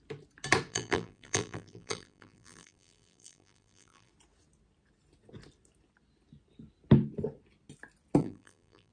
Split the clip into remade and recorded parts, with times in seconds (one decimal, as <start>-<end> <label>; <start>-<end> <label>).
0.0-0.7 recorded; 0.7-4.1 remade; 4.1-8.2 recorded; 8.2-8.9 remade